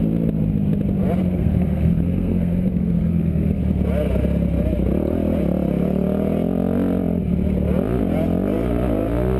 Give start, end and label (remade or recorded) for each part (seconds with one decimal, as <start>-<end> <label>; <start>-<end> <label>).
0.0-1.2 recorded; 1.2-3.6 remade; 3.6-9.4 recorded